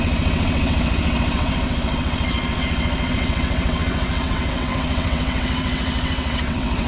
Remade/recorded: remade